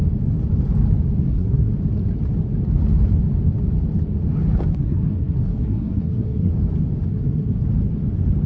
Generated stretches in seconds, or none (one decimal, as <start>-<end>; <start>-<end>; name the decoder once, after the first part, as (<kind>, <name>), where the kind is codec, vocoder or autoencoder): 1.2-1.7 (codec, SNAC); 4.7-6.5; 7.1-7.6